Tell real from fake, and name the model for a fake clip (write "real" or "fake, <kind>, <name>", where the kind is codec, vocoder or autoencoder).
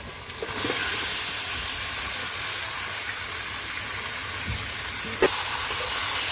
real